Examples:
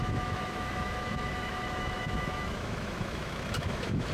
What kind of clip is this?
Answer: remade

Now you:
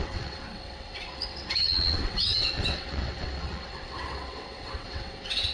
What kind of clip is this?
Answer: remade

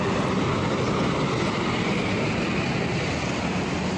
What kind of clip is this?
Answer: recorded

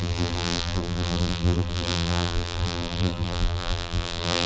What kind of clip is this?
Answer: remade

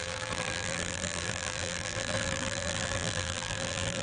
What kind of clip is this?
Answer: remade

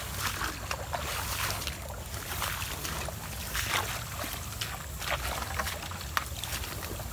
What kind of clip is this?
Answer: recorded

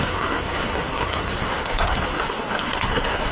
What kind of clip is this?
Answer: remade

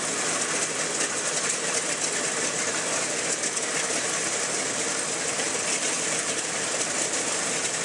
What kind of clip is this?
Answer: recorded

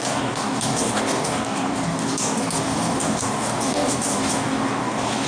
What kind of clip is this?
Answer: remade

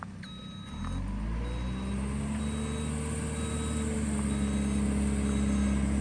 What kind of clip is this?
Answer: recorded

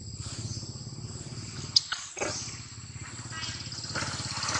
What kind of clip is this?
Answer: recorded